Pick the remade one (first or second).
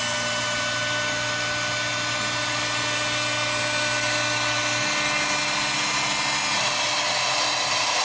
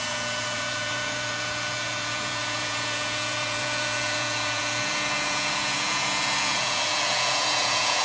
second